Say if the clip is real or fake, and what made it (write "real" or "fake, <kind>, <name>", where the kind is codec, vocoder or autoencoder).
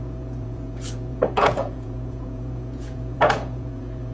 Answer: fake, vocoder, Vocos